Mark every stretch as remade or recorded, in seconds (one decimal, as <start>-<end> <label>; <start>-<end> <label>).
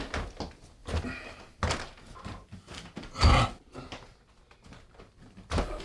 0.0-5.8 recorded